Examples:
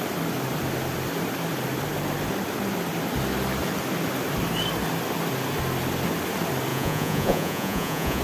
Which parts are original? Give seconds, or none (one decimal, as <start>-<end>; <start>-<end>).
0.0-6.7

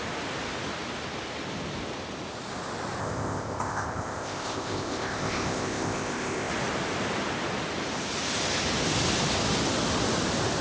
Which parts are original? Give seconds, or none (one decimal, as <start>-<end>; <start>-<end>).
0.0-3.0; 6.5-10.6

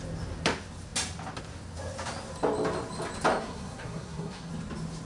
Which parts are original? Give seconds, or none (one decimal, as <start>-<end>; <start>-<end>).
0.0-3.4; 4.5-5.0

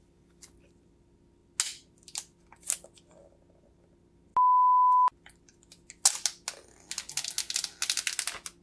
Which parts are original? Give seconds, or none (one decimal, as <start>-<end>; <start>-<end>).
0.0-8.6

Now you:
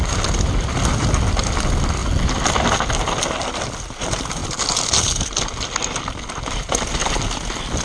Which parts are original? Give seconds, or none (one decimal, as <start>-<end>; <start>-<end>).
0.0-7.8